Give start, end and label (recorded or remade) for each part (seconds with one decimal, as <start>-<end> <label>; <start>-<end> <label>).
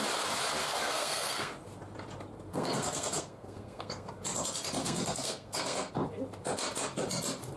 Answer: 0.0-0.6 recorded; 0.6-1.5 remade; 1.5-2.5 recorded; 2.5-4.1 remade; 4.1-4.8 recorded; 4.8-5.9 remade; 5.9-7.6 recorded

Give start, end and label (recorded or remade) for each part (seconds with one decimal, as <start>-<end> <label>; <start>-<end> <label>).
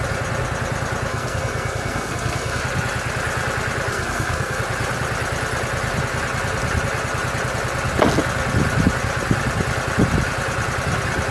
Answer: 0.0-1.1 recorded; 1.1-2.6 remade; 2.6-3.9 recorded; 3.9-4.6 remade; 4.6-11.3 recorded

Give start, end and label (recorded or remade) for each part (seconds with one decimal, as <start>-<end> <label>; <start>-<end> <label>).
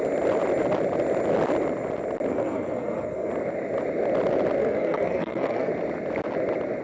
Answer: 0.0-2.3 recorded; 2.3-3.3 remade; 3.3-4.6 recorded; 4.6-5.7 remade; 5.7-6.8 recorded